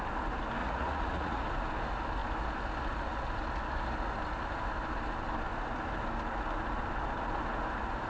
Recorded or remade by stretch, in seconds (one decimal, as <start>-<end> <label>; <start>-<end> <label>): 0.0-0.6 recorded; 0.6-1.4 remade; 1.4-8.1 recorded